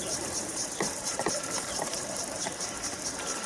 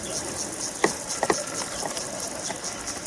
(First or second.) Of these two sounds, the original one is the second